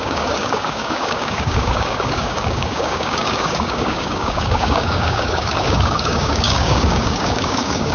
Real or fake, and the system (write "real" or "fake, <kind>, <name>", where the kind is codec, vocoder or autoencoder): fake, codec, DAC